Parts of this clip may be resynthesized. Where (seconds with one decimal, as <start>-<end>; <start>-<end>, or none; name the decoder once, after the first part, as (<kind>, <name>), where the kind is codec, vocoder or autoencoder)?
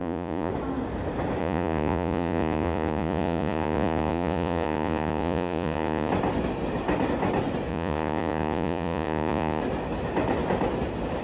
0.0-0.5 (vocoder, Vocos); 1.4-6.1; 7.7-9.6